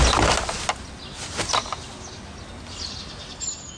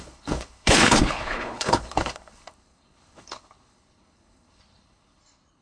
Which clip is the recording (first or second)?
first